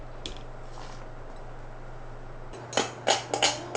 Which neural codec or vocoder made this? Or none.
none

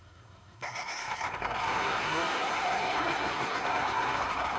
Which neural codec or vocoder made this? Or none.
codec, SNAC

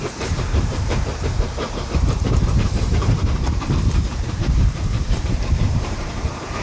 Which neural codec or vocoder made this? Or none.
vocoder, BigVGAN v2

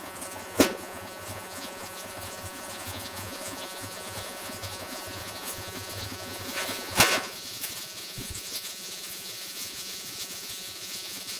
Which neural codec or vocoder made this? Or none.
vocoder, Vocos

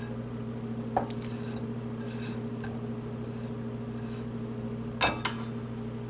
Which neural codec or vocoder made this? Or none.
none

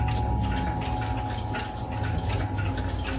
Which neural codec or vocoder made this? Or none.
none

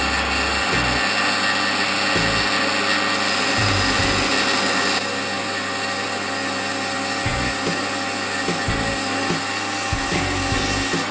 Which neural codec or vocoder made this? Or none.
none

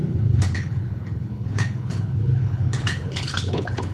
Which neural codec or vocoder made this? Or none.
codec, HILCodec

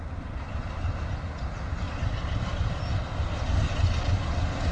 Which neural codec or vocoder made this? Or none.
none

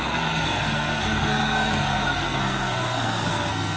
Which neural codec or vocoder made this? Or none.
codec, SNAC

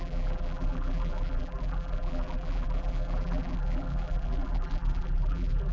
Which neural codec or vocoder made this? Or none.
vocoder, BigVGAN v2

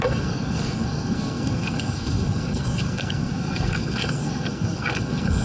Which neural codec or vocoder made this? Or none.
codec, SNAC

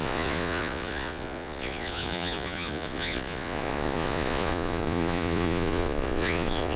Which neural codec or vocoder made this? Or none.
vocoder, Vocos